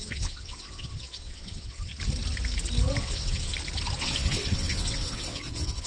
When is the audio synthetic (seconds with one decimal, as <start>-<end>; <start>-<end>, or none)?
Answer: 0.0-1.9; 3.0-3.5; 4.0-5.9